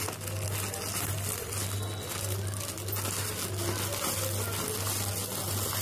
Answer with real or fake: real